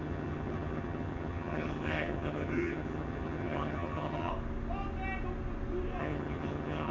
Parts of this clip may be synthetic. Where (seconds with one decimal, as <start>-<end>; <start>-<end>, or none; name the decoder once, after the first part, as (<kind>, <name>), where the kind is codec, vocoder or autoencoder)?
0.0-4.3 (vocoder, HiFi-GAN); 6.0-6.9

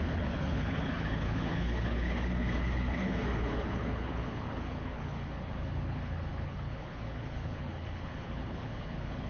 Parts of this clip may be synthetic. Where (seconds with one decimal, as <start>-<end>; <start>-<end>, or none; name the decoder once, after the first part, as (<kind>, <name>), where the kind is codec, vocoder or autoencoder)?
0.0-9.3 (codec, HILCodec)

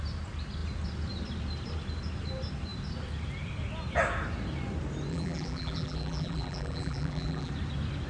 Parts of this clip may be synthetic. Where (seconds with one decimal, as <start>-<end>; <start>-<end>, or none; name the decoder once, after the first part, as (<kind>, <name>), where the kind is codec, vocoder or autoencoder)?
5.1-7.5 (vocoder, BigVGAN v2)

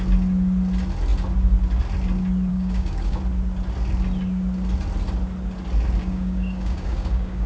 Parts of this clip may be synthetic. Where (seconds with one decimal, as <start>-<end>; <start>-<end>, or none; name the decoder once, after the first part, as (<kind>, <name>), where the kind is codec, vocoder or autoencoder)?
2.5-3.2 (codec, DAC); 6.0-7.5

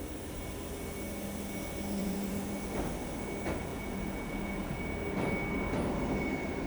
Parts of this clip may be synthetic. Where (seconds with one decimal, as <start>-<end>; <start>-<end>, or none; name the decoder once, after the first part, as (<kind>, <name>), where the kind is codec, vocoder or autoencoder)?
2.0-2.5 (vocoder, Vocos); 3.7-4.8

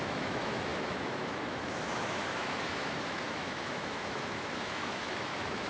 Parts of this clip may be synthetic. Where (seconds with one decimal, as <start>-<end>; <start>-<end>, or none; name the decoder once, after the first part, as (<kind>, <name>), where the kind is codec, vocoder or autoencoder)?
0.0-5.7 (autoencoder, DAC-VAE)